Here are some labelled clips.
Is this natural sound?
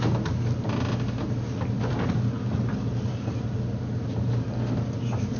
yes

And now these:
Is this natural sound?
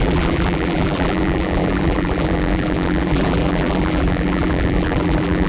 no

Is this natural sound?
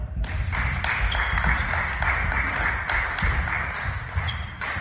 yes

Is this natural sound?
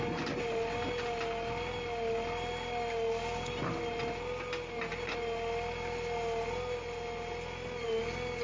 yes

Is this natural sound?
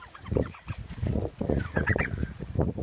no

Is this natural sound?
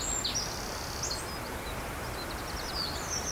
yes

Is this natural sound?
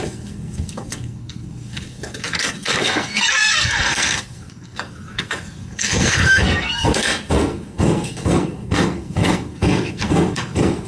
no